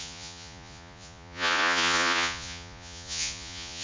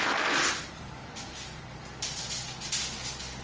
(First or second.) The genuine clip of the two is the second